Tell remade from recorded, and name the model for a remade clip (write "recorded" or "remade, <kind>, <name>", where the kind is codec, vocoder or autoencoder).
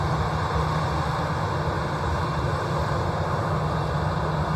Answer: recorded